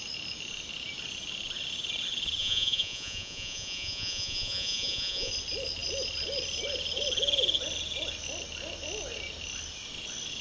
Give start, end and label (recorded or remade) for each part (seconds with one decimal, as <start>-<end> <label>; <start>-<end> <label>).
0.0-2.4 recorded; 2.4-5.3 remade; 5.3-10.4 recorded